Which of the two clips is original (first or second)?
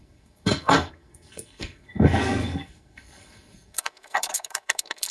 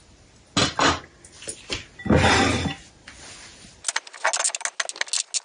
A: second